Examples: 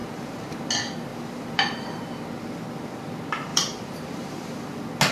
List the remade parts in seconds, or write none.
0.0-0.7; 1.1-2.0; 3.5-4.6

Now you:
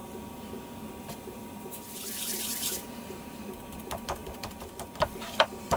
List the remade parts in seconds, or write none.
0.9-5.8

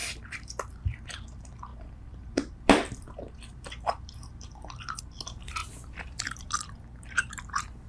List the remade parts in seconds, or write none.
0.0-0.7; 1.7-5.0; 5.6-7.9

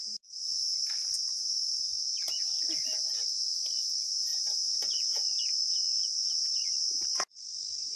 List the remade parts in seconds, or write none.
0.0-0.6

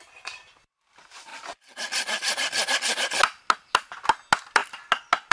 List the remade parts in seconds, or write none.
none

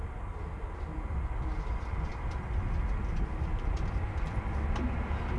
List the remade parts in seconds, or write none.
none

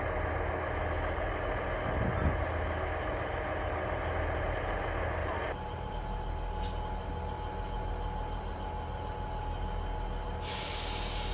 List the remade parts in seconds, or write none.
5.2-5.9